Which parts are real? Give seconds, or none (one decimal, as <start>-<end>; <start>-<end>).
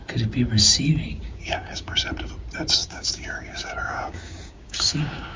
0.0-1.1; 2.0-2.8